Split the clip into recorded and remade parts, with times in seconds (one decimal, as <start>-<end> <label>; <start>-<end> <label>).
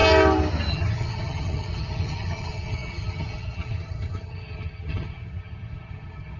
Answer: 0.0-0.7 recorded; 0.7-6.4 remade